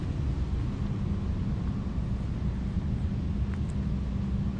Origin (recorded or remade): recorded